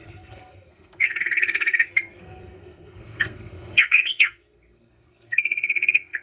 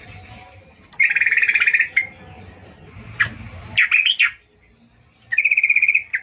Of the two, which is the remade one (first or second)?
first